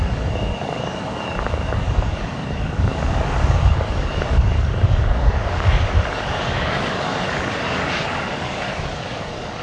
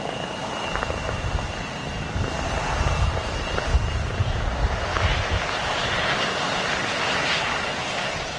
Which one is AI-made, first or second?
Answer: first